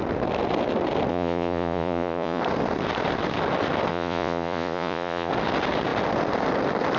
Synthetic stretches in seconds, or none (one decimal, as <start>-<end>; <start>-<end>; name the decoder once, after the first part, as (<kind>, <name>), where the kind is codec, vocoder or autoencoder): 1.1-2.4 (vocoder, Vocos); 3.9-5.3